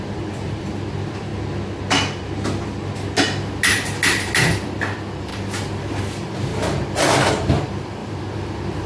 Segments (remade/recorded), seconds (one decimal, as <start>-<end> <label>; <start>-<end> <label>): 0.0-1.3 remade; 1.3-4.5 recorded; 4.5-5.3 remade; 5.3-6.0 recorded; 6.0-6.5 remade; 6.5-7.3 recorded; 7.3-8.9 remade